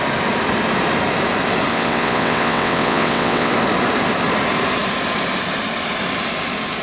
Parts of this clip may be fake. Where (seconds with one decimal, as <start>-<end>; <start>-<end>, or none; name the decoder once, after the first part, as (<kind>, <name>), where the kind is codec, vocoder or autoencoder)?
1.7-3.5 (vocoder, WaveNeXt)